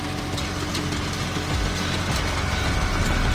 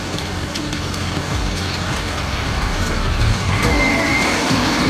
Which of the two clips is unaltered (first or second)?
first